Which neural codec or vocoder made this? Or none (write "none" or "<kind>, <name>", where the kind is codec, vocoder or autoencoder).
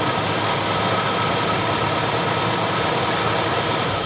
none